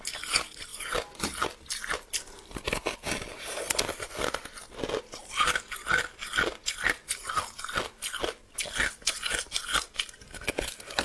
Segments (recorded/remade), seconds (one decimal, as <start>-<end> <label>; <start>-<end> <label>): 0.0-11.0 recorded